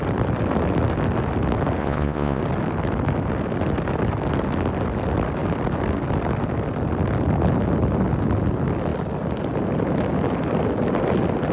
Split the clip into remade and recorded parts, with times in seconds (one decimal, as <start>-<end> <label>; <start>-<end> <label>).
0.0-1.8 recorded; 1.8-2.4 remade; 2.4-11.5 recorded